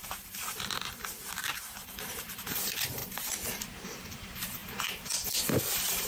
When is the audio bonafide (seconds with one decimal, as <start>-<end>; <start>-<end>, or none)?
0.0-2.2; 3.0-4.0